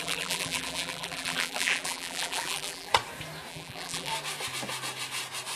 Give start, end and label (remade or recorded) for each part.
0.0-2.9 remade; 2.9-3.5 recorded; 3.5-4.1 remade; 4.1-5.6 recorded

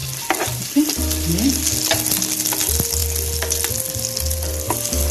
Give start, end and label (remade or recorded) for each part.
0.0-5.1 recorded